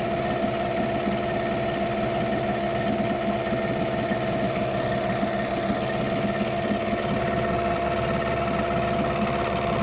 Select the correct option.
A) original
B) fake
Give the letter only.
A